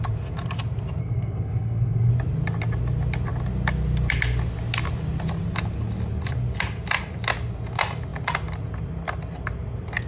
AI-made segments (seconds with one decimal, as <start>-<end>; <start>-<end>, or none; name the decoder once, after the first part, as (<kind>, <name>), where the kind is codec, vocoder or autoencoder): 1.0-2.1 (codec, SNAC)